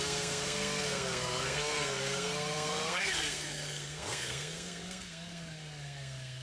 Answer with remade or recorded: remade